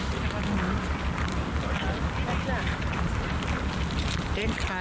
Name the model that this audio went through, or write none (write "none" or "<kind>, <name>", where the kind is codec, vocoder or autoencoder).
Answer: none